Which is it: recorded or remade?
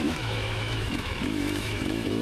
remade